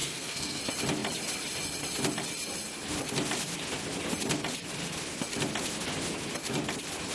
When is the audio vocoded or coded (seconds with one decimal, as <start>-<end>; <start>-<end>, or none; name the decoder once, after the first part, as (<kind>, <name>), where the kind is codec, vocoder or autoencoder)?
0.0-0.6 (codec, SNAC)